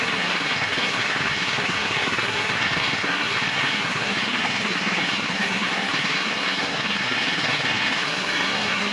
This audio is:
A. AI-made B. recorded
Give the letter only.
A